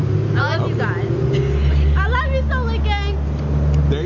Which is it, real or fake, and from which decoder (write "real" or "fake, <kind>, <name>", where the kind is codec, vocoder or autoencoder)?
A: real